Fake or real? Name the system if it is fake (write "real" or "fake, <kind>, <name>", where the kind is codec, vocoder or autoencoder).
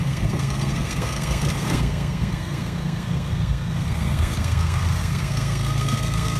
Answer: fake, codec, SNAC